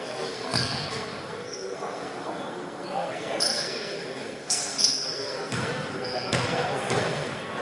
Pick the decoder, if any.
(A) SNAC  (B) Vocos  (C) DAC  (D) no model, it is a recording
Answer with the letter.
A